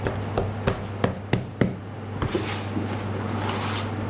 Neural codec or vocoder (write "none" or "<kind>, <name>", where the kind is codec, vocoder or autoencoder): none